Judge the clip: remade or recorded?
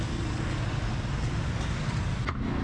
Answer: recorded